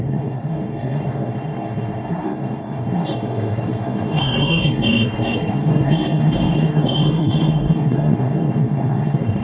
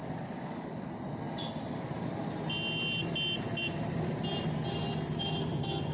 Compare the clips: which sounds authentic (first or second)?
second